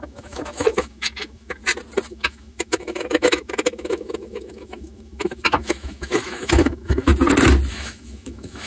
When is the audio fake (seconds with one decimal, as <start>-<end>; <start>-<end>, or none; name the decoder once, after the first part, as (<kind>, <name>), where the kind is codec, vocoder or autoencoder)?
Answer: 0.0-1.6 (autoencoder, DAC-VAE); 2.1-7.1; 7.7-8.7